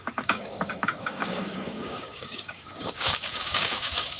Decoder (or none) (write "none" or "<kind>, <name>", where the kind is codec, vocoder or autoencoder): codec, DAC